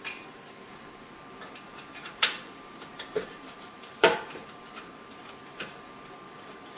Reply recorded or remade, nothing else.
remade